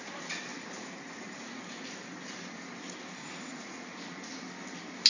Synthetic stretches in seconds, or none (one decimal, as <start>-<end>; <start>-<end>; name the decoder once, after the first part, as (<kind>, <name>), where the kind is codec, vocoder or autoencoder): 0.5-1.6 (vocoder, Vocos); 3.2-4.2